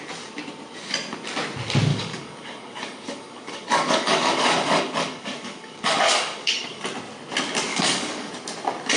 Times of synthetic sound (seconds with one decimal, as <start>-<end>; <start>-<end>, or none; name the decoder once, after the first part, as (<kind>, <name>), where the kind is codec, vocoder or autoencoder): 1.9-6.8 (codec, DAC); 7.7-8.3